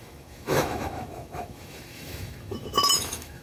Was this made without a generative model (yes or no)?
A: no